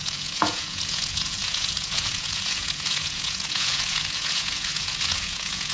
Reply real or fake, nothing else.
fake